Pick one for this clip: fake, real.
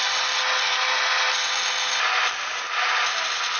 real